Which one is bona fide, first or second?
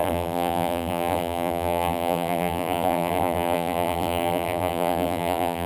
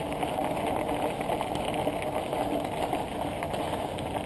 second